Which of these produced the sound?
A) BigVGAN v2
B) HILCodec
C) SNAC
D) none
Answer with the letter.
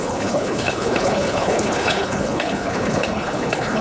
B